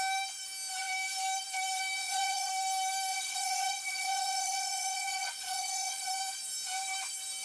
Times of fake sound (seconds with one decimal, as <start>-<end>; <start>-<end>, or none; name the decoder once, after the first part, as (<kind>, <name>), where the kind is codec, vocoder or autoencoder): 2.0-2.5 (vocoder, Vocos); 3.1-6.1